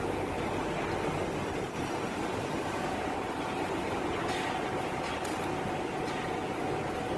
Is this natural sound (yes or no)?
yes